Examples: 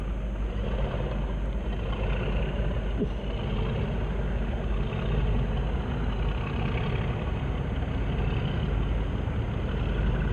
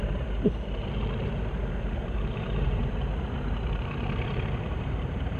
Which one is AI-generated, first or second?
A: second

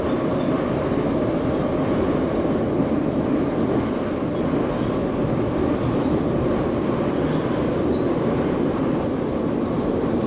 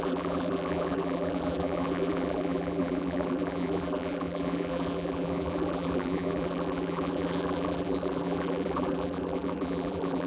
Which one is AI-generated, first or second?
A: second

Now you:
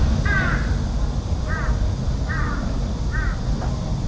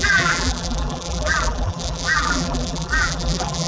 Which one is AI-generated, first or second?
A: second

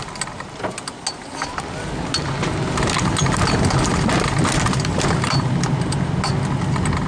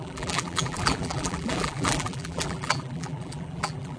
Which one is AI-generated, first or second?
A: second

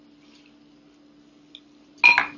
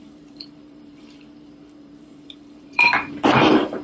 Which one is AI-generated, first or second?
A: second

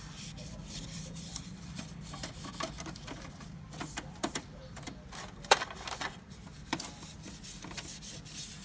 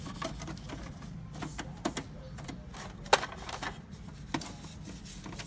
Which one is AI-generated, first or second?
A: first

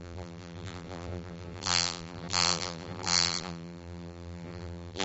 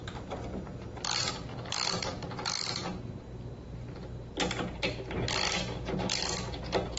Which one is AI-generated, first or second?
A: first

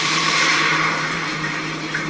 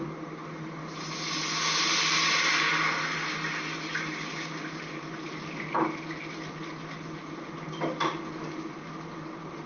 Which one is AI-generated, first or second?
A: first